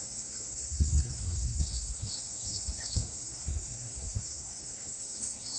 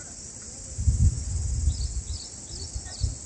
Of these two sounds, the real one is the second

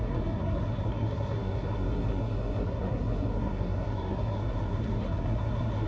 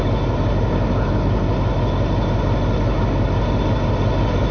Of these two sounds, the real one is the second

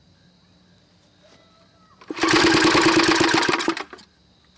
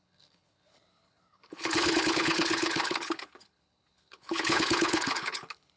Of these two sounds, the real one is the first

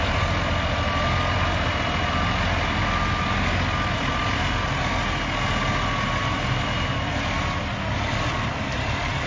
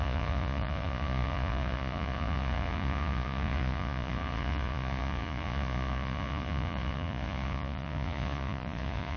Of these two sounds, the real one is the first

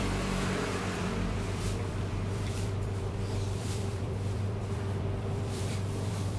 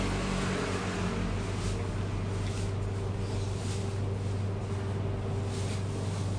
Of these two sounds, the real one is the second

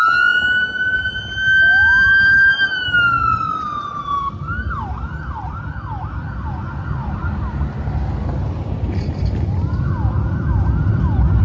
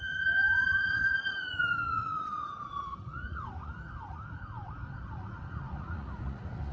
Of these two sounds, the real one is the first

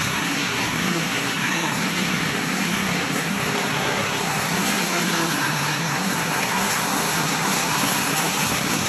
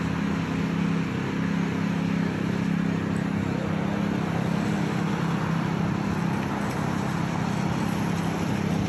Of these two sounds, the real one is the second